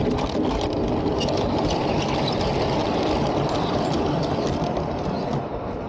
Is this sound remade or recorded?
recorded